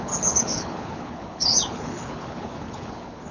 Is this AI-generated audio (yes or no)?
yes